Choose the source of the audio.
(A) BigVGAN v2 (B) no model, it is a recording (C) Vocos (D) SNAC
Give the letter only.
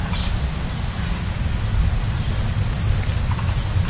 B